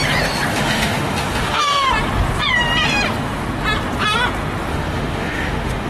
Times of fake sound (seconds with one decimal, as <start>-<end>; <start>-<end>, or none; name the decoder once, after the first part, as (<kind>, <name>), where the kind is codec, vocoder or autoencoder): 0.5-1.9 (autoencoder, DAC-VAE); 4.7-5.9